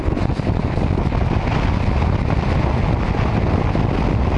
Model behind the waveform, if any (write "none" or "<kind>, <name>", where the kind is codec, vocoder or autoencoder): none